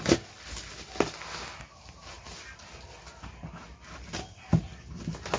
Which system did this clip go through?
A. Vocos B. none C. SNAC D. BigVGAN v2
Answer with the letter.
B